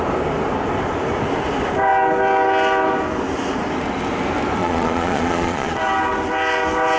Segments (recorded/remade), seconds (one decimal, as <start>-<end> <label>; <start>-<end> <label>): 0.0-4.6 recorded; 4.6-5.8 remade; 5.8-7.0 recorded

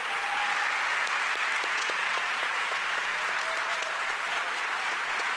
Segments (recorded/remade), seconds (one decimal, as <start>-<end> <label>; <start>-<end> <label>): 0.0-0.4 remade; 0.4-1.7 recorded; 1.7-3.1 remade; 3.1-3.6 recorded; 3.6-5.4 remade

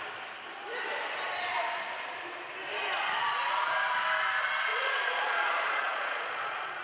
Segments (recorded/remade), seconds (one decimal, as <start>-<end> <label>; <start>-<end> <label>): 0.0-4.7 recorded; 4.7-6.8 remade

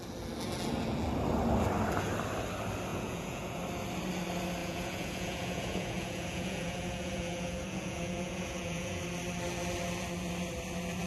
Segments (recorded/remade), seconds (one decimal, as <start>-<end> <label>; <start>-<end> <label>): 0.0-2.9 recorded; 2.9-3.6 remade; 3.6-4.6 recorded; 4.6-9.0 remade; 9.0-11.1 recorded

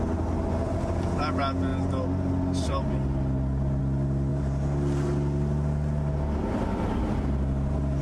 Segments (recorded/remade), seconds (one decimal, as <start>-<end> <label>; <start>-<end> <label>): 0.0-8.0 recorded

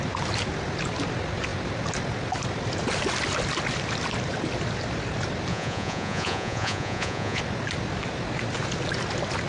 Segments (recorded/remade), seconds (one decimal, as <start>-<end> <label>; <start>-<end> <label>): 0.0-5.5 recorded; 5.5-7.4 remade; 7.4-9.5 recorded

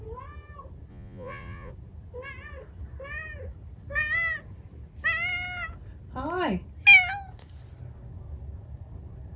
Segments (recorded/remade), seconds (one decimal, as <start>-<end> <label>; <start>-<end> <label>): 0.0-0.9 recorded; 0.9-1.7 remade; 1.7-9.4 recorded

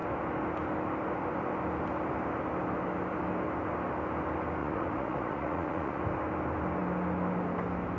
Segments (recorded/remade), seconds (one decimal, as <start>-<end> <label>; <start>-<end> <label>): 0.0-4.6 recorded; 4.6-6.0 remade; 6.0-8.0 recorded